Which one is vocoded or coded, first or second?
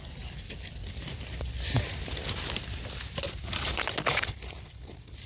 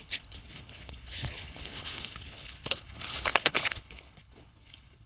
second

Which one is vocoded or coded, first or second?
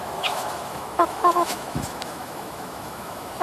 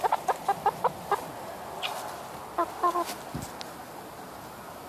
first